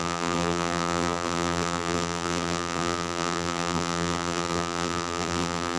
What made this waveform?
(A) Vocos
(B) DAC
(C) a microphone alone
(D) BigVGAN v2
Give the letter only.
D